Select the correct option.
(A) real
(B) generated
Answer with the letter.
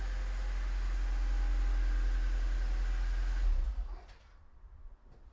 A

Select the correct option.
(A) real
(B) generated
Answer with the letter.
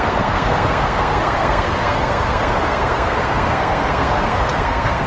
B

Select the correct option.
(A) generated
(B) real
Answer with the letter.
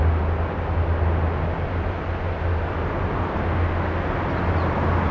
B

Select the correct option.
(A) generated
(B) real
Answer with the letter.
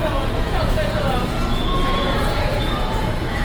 A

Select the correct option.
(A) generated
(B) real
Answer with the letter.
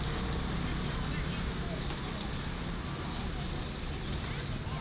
B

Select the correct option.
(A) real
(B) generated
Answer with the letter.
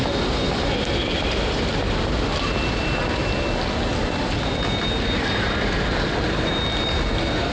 A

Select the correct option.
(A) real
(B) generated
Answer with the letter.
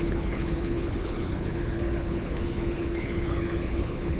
B